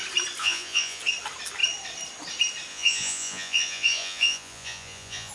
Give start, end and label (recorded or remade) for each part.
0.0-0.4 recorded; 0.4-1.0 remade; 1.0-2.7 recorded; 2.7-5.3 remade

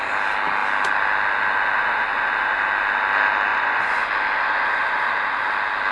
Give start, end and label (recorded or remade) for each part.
0.0-3.5 recorded; 3.5-4.1 remade; 4.1-5.9 recorded

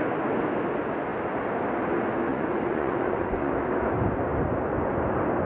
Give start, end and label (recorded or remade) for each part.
0.0-2.3 recorded; 2.3-3.5 remade; 3.5-5.5 recorded